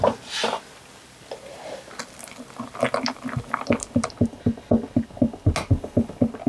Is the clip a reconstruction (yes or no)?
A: no